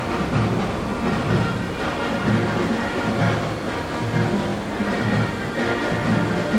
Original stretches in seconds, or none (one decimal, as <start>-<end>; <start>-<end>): 0.0-6.6